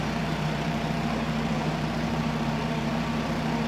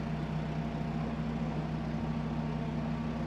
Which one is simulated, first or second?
first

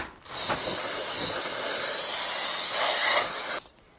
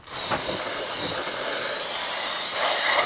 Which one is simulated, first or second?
second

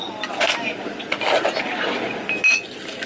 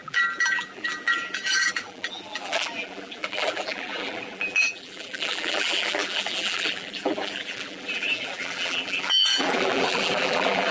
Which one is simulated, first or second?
second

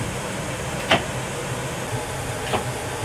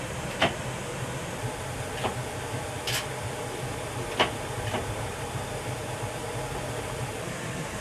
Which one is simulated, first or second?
second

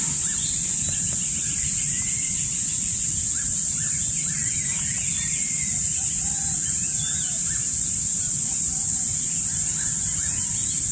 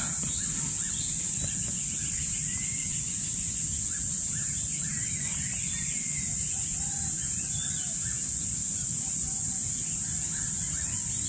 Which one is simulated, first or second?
first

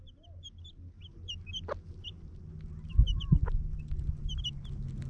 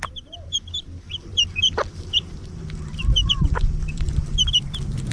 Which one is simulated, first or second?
second